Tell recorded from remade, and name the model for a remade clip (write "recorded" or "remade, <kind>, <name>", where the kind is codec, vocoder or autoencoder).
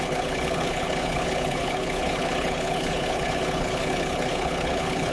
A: remade, codec, HILCodec